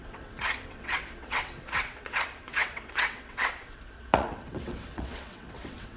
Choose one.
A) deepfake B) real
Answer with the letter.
A